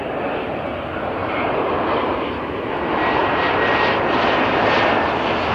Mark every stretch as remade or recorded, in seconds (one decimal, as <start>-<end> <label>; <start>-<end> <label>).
0.0-1.2 recorded; 1.2-2.4 remade; 2.4-3.2 recorded; 3.2-4.9 remade; 4.9-5.5 recorded